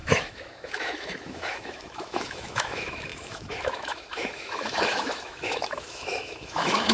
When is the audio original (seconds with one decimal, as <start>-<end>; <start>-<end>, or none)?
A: none